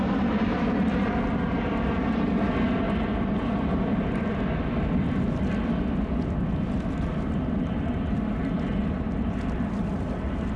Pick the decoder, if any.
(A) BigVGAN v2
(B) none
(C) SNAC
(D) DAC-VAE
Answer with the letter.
B